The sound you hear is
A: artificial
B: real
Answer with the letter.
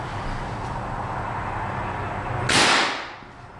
B